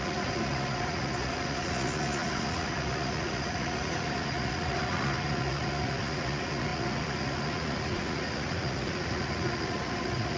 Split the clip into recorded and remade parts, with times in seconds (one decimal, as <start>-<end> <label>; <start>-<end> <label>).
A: 0.0-10.4 remade